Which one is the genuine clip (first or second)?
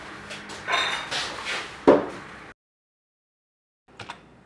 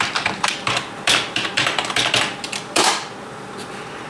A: first